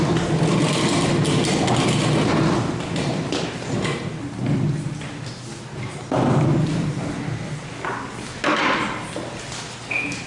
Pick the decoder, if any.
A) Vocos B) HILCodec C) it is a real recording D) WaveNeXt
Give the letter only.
C